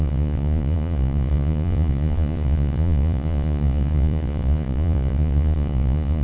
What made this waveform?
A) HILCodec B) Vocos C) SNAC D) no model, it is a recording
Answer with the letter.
B